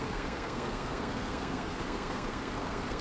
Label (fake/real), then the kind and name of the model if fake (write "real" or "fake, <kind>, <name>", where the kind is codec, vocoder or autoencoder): fake, codec, SNAC